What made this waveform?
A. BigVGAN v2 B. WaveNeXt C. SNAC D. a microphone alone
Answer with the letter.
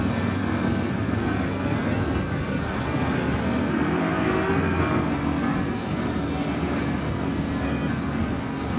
C